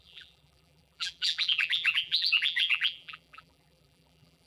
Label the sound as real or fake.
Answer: fake